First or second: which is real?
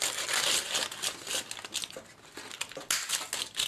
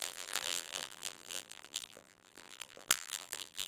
first